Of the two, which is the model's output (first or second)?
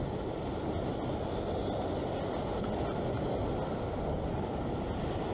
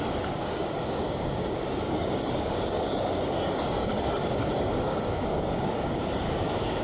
second